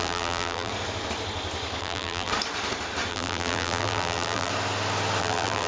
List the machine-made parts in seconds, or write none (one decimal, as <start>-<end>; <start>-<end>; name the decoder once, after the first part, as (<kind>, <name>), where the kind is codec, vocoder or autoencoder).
0.0-0.7 (vocoder, BigVGAN v2); 1.8-2.3; 3.1-4.5; 5.2-5.7